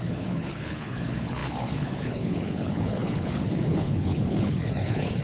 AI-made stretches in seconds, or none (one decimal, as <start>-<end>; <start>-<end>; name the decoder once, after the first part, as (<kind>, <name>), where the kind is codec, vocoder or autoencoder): 0.0-5.2 (codec, HILCodec)